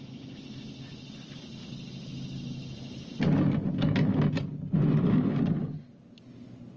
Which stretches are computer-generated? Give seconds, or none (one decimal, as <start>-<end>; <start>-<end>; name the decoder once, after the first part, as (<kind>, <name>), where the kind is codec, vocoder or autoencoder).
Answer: none